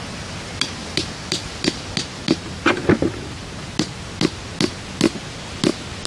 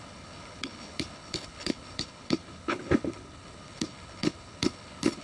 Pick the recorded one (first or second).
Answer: first